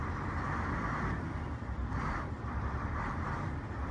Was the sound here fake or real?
fake